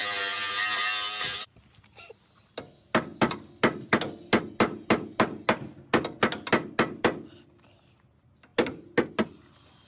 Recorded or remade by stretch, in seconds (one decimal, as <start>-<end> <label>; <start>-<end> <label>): 0.0-9.9 recorded